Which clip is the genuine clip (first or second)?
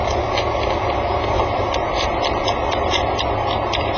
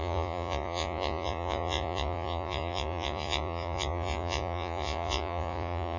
first